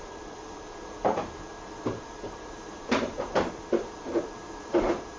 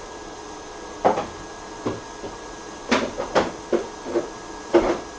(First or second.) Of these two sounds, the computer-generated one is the first